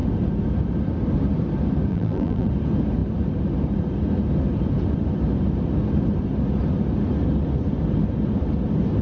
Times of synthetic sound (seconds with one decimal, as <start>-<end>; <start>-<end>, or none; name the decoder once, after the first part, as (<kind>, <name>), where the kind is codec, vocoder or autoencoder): 1.9-2.5 (vocoder, BigVGAN v2)